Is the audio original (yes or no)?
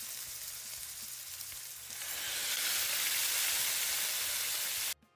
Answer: yes